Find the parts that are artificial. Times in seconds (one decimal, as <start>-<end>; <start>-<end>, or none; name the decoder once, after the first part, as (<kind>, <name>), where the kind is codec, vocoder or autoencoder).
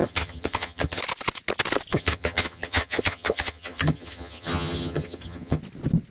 0.0-1.0 (vocoder, HiFi-GAN); 1.9-5.6